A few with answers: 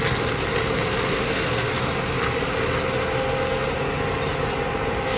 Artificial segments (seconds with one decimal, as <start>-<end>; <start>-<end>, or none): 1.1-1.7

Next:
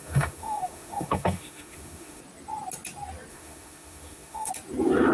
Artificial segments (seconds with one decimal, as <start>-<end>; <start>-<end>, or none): 0.0-2.2; 3.3-4.5

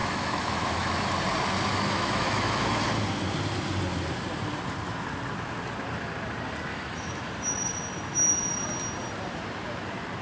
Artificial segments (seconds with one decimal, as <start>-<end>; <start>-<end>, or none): 0.0-1.1; 1.7-2.8; 6.7-7.3

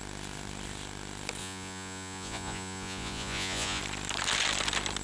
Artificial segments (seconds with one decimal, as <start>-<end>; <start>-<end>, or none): 1.4-3.8

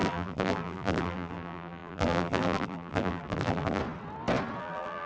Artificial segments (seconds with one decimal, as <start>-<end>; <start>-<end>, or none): 0.0-3.8; 4.6-5.1

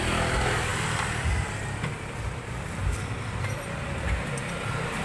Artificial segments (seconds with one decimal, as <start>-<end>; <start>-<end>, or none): 0.0-5.0